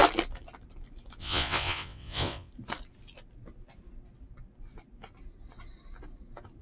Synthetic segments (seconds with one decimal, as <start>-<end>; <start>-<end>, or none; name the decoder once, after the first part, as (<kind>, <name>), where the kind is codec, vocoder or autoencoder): 1.2-2.5 (vocoder, WaveNeXt)